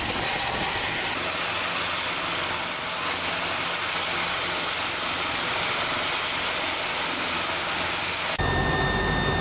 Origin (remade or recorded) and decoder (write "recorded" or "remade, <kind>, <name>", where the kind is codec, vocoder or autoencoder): recorded